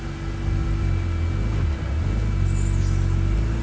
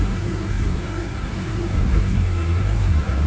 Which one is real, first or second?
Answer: first